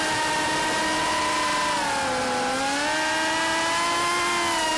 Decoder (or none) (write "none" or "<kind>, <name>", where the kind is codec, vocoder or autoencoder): none